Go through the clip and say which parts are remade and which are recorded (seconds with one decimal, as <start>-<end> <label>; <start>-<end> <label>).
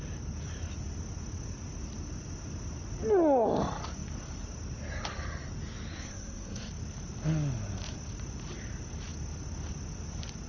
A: 0.0-5.9 recorded; 5.9-6.7 remade; 6.7-10.5 recorded